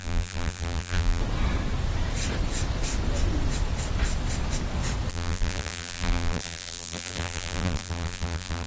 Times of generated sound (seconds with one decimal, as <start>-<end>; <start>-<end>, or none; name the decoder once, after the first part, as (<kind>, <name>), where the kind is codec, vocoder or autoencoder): 0.0-1.2 (vocoder, BigVGAN v2); 5.1-8.7